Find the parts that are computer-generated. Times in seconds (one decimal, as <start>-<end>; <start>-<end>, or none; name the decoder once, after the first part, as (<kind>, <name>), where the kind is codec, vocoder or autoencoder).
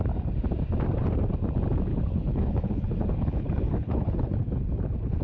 1.9-5.2 (codec, HILCodec)